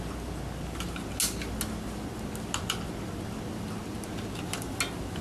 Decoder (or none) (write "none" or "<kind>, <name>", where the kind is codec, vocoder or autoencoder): none